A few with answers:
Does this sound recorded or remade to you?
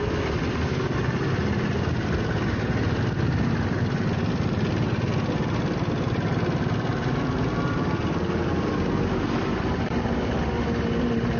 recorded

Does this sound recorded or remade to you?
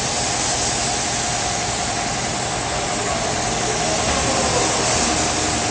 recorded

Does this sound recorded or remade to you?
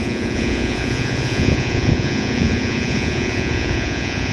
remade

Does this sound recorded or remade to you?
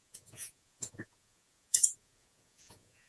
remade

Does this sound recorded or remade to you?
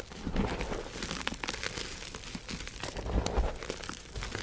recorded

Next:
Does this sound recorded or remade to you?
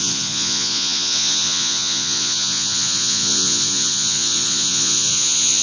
remade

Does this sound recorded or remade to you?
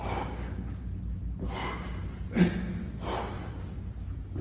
recorded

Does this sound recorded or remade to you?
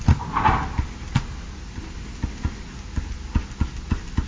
recorded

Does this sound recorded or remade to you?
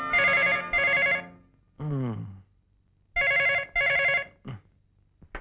recorded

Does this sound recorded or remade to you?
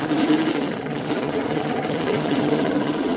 remade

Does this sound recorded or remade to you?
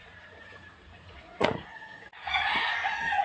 remade